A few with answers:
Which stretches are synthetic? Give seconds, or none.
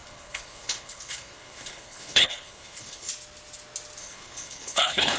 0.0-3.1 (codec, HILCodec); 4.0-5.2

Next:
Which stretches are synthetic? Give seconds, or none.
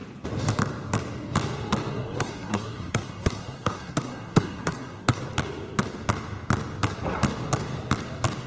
1.9-5.2 (codec, SNAC)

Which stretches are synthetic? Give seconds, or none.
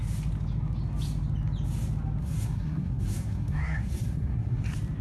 2.2-4.6 (codec, SNAC)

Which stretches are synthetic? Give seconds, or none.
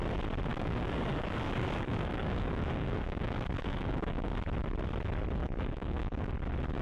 0.5-4.3 (codec, DAC); 5.4-6.3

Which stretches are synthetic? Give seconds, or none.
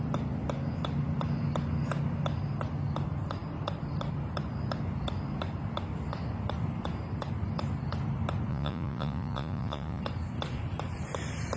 8.5-10.0 (vocoder, Vocos)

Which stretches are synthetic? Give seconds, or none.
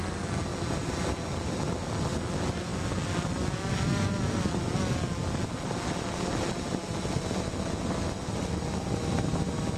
none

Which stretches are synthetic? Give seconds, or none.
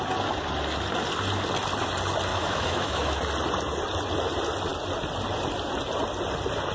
2.3-3.2 (autoencoder, DAC-VAE)